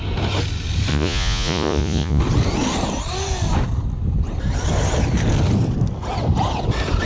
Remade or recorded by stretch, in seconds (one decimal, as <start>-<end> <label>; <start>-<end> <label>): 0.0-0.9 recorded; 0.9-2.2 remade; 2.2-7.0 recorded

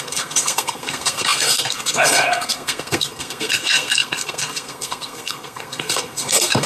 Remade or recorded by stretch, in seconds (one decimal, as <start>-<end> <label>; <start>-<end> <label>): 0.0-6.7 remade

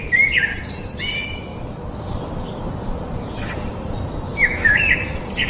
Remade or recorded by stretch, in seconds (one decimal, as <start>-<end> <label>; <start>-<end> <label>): 0.0-1.5 recorded; 1.5-4.8 remade; 4.8-5.5 recorded